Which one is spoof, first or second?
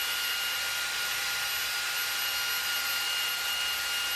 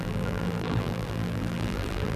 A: second